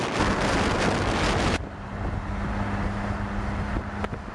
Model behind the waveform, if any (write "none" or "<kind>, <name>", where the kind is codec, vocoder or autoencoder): none